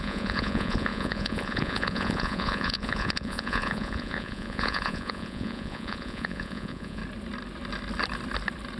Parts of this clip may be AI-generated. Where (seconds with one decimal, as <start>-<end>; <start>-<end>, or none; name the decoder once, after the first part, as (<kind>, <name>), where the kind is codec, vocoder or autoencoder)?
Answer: 0.0-7.0 (vocoder, Vocos)